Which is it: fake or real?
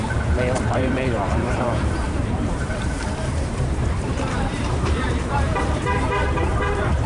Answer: fake